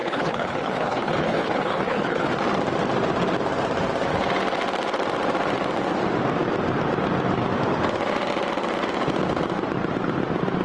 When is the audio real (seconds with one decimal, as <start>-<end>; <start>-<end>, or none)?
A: 2.3-10.6